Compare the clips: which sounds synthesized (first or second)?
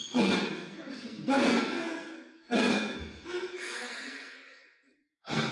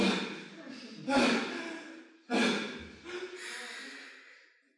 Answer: first